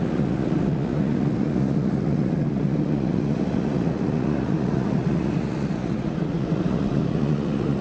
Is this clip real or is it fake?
fake